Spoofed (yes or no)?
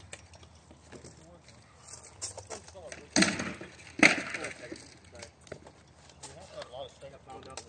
no